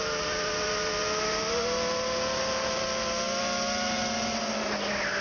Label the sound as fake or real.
real